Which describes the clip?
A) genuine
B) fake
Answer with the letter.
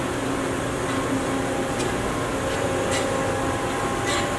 A